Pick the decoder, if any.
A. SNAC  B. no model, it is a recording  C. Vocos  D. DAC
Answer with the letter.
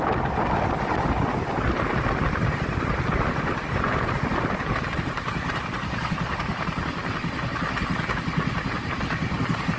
B